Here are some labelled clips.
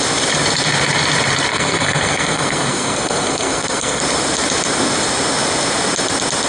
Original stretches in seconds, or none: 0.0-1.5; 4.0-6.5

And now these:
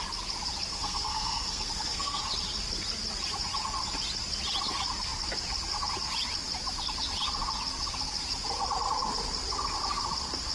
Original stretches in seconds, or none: 0.0-0.7; 2.2-10.5

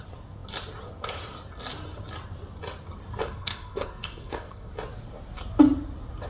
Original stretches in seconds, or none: 0.0-3.2; 4.7-6.3